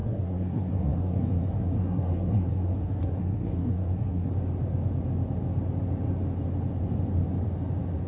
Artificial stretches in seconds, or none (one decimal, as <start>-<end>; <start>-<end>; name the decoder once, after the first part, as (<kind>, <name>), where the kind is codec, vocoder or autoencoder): 0.0-4.3 (codec, SNAC)